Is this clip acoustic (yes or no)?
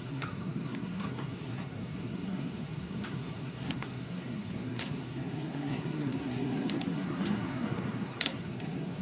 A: no